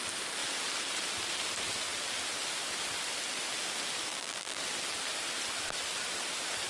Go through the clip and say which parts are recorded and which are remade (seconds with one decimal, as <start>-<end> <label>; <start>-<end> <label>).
0.0-4.1 recorded; 4.1-4.6 remade; 4.6-6.7 recorded